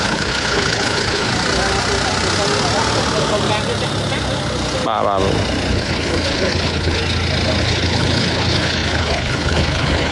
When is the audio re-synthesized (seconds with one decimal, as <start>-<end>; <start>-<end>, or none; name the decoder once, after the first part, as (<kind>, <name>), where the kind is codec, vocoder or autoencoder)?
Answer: 0.0-1.3 (codec, HILCodec); 5.7-7.0; 7.6-10.1